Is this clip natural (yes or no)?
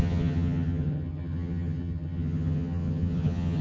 no